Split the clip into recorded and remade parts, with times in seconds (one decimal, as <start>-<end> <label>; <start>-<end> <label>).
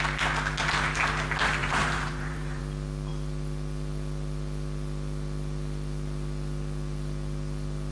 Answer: 0.0-1.6 recorded; 1.6-2.6 remade; 2.6-7.9 recorded